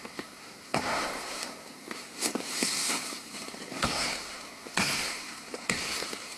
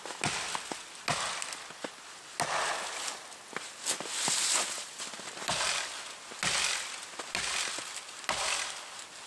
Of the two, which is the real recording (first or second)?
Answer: second